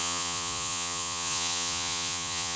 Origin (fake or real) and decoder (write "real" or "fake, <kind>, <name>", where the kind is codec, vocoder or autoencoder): fake, vocoder, Vocos